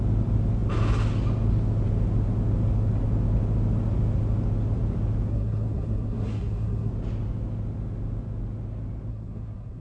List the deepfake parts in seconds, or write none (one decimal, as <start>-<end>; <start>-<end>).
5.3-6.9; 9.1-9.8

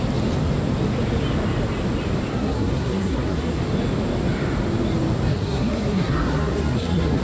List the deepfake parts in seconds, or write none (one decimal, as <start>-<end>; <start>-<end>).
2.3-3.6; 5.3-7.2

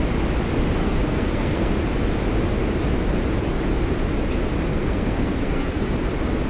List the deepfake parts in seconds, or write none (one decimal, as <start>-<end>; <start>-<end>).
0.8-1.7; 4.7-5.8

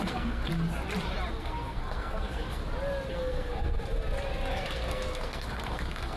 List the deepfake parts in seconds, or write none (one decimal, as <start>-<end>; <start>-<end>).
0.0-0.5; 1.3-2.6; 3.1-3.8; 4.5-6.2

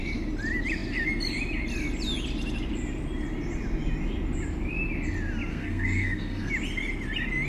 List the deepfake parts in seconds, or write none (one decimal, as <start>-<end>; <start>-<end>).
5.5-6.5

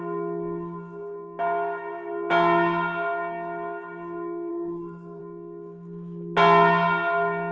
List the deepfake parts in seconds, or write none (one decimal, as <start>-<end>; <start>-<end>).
4.5-5.2